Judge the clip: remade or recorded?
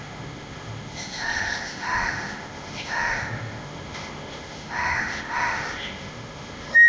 remade